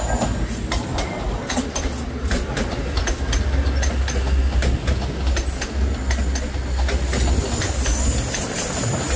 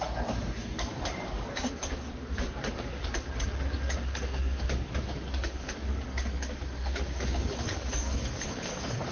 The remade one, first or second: second